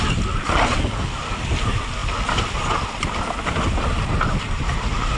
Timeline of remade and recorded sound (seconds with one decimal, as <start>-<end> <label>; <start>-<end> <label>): 0.0-5.2 recorded